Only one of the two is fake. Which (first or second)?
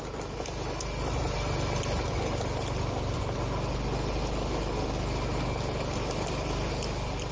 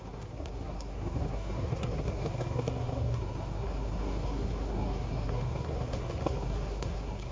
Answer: second